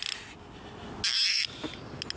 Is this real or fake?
real